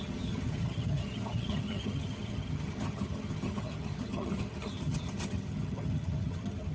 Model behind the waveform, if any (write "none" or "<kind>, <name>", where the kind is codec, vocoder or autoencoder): vocoder, HiFi-GAN